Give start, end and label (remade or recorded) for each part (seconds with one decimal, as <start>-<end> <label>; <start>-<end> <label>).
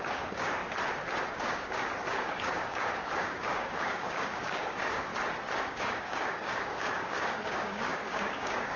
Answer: 0.0-0.6 remade; 0.6-1.3 recorded; 1.3-5.1 remade; 5.1-5.6 recorded; 5.6-8.8 remade